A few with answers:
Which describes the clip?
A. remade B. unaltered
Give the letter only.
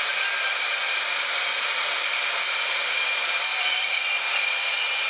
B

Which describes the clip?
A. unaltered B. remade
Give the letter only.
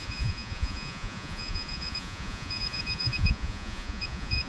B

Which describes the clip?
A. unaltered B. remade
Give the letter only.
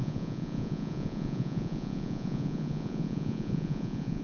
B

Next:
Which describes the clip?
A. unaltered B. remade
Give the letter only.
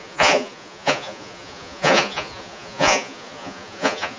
B